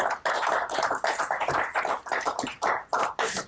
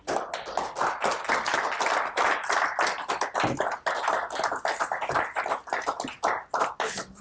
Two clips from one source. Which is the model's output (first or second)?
first